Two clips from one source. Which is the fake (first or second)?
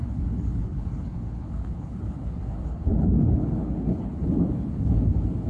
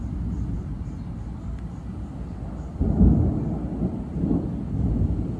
first